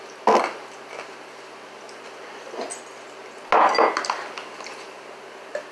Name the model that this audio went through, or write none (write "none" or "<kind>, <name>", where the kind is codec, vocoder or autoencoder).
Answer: none